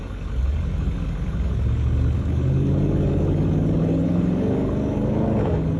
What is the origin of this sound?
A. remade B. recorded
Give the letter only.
A